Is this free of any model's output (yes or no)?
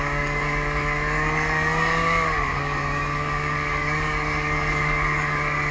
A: no